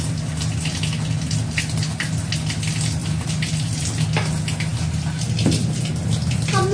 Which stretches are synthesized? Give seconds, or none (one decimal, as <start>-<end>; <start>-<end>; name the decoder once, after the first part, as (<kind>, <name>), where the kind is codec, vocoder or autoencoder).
none